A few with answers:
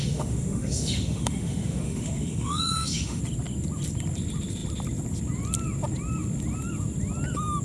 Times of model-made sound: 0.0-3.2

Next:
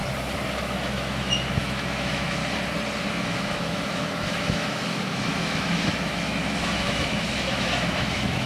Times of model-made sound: 0.6-2.4; 3.1-8.5